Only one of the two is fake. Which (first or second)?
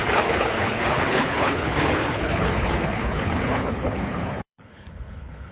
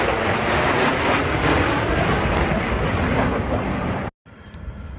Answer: first